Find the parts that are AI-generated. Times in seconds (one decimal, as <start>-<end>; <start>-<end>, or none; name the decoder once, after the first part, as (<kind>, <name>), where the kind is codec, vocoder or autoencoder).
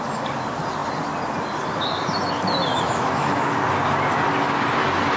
2.7-3.6 (autoencoder, DAC-VAE)